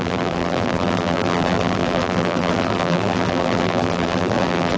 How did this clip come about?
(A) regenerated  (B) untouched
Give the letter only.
A